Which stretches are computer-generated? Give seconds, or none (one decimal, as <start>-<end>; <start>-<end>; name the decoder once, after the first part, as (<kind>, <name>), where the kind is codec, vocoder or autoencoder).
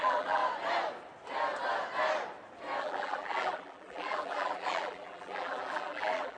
0.0-0.4 (vocoder, BigVGAN v2); 2.8-6.4